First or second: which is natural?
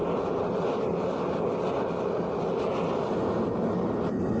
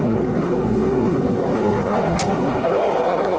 first